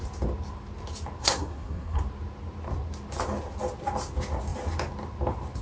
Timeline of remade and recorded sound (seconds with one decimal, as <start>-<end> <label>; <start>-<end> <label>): 0.0-1.2 recorded; 1.2-2.0 remade; 2.0-5.6 recorded